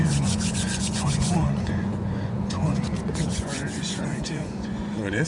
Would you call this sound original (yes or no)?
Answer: no